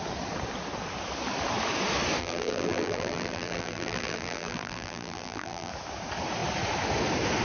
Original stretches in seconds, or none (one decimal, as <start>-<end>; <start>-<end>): 0.0-2.2; 5.7-7.4